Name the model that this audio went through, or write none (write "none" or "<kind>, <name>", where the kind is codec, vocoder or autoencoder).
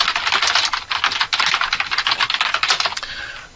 none